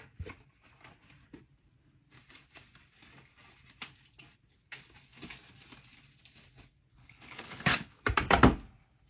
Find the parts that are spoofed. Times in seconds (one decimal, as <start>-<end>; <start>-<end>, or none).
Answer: 6.9-7.9